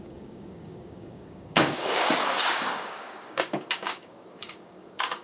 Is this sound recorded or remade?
remade